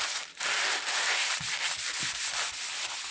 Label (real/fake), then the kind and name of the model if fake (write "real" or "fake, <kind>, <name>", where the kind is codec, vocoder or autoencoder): real